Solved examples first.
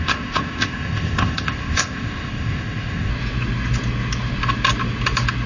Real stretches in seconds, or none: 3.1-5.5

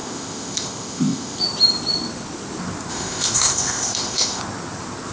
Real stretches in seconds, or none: 1.4-2.9; 4.4-5.1